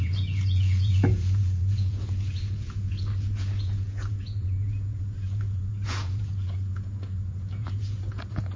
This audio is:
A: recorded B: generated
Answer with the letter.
B